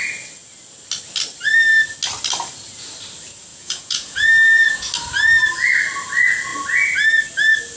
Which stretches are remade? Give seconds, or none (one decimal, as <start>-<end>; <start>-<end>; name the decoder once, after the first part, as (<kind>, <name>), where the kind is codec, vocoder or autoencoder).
3.5-4.9 (vocoder, Vocos)